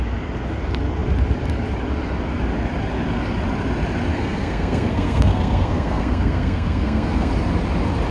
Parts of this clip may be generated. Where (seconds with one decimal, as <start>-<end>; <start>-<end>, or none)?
4.1-7.3